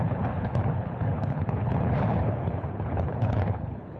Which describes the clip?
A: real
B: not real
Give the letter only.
B